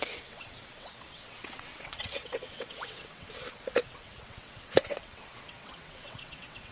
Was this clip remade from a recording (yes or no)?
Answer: yes